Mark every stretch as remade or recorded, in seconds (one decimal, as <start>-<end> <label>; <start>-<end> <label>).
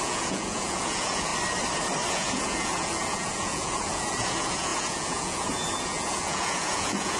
0.0-1.3 remade; 1.3-2.1 recorded; 2.1-7.2 remade